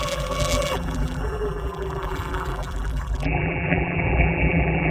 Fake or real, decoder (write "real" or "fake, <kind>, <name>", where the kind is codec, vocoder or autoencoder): fake, vocoder, BigVGAN v2